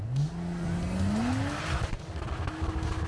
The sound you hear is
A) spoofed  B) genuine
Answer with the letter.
B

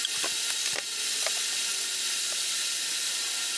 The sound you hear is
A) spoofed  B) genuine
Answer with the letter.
B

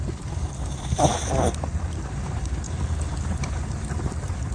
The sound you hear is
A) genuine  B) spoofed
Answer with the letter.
A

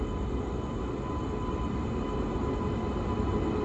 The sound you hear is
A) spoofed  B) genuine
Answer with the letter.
B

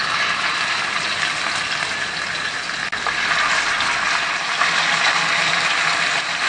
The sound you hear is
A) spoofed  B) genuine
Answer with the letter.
B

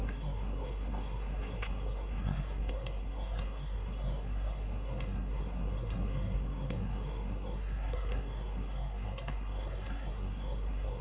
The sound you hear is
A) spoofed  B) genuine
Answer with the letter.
A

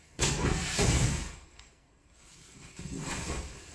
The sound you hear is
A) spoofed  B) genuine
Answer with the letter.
A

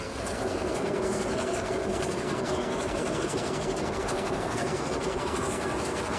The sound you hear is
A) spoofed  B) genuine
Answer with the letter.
A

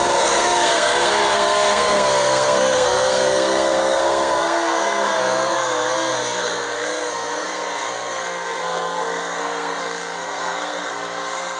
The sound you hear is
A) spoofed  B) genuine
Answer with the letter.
A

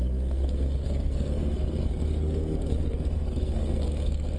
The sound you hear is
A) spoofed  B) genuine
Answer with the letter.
A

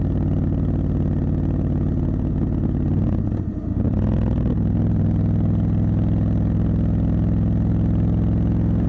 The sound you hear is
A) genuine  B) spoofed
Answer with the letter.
A